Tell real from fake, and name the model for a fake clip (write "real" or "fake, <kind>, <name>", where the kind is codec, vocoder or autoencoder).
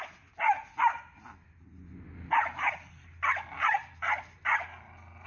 real